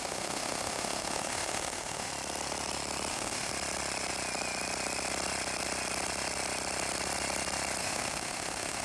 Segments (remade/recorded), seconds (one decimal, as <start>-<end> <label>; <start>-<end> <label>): 0.0-2.1 remade; 2.1-3.1 recorded; 3.1-3.5 remade; 3.5-7.8 recorded; 7.8-8.8 remade